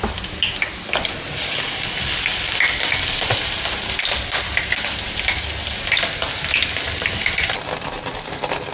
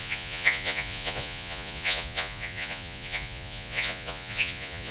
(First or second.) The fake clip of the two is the second